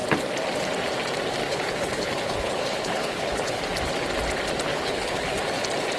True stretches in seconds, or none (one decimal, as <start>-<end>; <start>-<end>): 0.0-1.4; 3.6-4.7; 5.4-6.0